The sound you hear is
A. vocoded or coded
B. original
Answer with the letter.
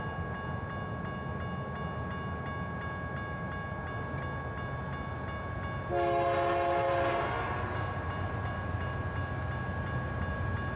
B